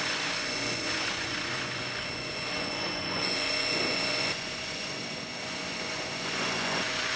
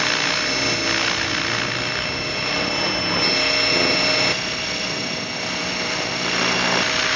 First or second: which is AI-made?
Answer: first